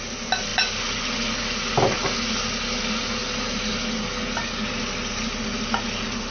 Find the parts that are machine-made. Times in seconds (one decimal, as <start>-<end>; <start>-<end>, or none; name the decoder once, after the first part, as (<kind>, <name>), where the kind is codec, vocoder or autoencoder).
none